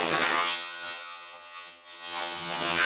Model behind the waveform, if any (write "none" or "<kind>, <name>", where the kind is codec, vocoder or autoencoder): vocoder, HiFi-GAN